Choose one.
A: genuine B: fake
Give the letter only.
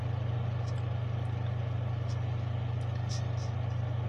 A